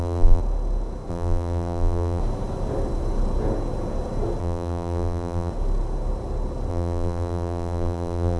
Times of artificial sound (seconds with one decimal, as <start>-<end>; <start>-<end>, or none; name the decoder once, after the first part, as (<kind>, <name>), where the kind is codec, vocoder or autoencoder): 0.0-0.4 (vocoder, BigVGAN v2); 1.1-2.2; 4.4-5.5; 6.7-8.4